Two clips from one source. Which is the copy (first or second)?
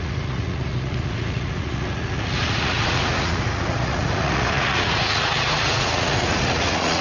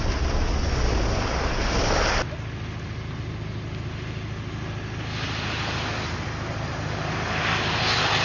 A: first